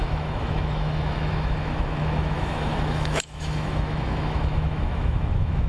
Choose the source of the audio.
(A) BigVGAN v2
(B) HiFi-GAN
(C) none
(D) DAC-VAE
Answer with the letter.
D